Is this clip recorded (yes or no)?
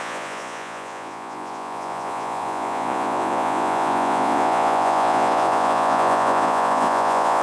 no